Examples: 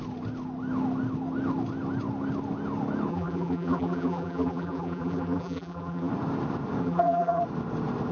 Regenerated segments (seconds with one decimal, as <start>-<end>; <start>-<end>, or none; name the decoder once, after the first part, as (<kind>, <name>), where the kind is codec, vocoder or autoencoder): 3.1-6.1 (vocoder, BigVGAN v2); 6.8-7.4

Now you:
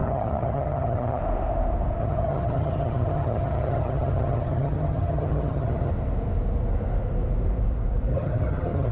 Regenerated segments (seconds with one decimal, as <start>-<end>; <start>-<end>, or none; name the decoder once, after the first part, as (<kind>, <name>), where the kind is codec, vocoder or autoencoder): 0.0-1.2 (vocoder, HiFi-GAN); 2.0-5.9; 8.1-8.9

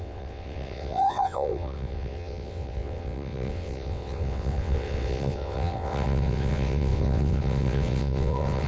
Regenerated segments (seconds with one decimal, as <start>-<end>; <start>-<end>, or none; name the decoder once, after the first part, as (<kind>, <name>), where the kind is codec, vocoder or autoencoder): 0.0-8.7 (vocoder, WaveNeXt)

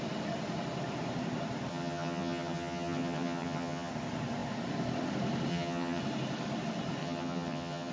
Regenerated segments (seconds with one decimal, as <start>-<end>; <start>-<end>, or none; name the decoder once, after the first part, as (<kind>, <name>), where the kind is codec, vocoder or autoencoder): 1.7-3.9 (vocoder, HiFi-GAN); 5.5-6.0; 7.0-7.9

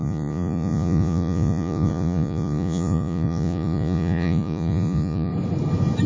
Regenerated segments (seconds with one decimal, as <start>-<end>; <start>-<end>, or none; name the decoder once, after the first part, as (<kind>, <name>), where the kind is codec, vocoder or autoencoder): 0.0-5.3 (vocoder, Vocos)

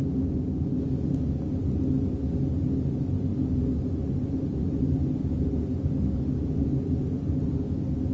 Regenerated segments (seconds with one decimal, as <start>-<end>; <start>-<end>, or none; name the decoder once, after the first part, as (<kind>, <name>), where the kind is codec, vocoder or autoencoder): none